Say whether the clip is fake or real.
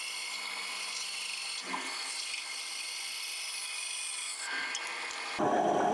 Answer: real